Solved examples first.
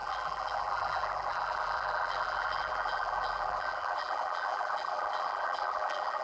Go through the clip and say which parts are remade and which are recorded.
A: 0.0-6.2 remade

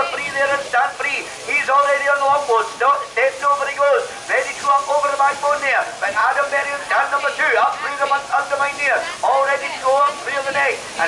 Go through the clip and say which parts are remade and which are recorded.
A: 0.0-11.1 recorded

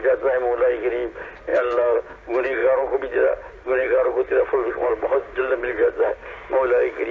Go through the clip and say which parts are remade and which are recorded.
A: 0.0-1.5 recorded; 1.5-2.1 remade; 2.1-2.6 recorded; 2.6-6.1 remade; 6.1-7.1 recorded

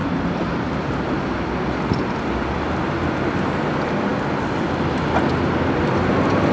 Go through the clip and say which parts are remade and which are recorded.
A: 0.0-1.2 remade; 1.2-6.5 recorded

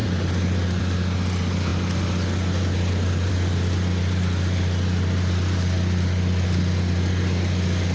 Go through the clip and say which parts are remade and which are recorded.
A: 0.0-0.8 remade; 0.8-7.9 recorded